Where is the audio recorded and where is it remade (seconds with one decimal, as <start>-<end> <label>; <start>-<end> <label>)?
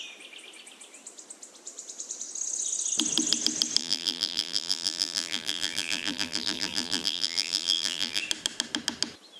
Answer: 0.0-3.8 recorded; 3.8-8.2 remade; 8.2-9.4 recorded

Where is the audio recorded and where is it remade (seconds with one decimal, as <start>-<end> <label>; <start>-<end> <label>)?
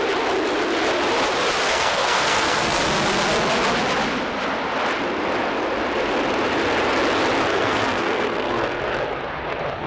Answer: 0.0-1.7 recorded; 1.7-2.8 remade; 2.8-7.5 recorded; 7.5-8.8 remade; 8.8-9.9 recorded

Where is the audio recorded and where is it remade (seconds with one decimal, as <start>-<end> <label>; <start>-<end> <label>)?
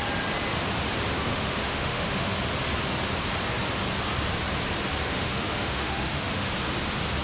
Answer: 0.0-1.3 recorded; 1.3-2.3 remade; 2.3-5.1 recorded; 5.1-6.5 remade; 6.5-7.2 recorded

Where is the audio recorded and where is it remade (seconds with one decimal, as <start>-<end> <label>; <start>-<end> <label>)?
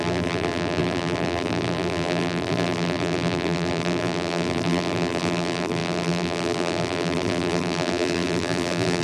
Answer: 0.0-9.0 remade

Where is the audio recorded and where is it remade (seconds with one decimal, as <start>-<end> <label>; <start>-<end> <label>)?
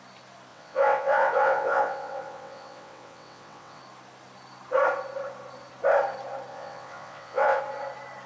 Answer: 0.0-0.5 recorded; 0.5-3.8 remade; 3.8-6.5 recorded; 6.5-7.6 remade; 7.6-8.3 recorded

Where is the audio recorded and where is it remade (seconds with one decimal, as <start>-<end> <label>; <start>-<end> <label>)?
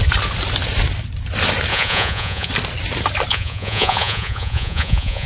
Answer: 0.0-1.7 recorded; 1.7-2.5 remade; 2.5-3.3 recorded; 3.3-5.3 remade